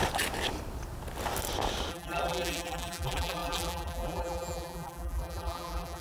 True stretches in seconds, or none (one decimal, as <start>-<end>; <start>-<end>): 0.0-1.9